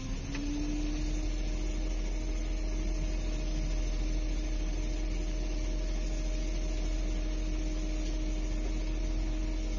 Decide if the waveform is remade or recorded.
recorded